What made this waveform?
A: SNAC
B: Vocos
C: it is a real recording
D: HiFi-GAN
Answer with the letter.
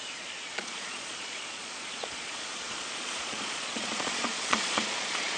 B